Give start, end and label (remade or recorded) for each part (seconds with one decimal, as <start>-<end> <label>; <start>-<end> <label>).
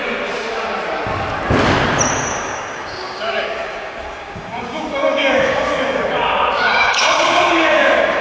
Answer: 0.0-2.3 recorded; 2.3-8.2 remade